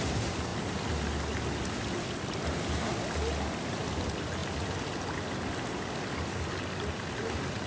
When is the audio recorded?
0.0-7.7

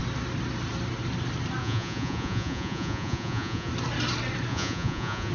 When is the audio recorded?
0.0-1.6; 3.7-4.5